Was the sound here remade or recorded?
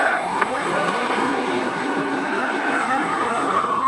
remade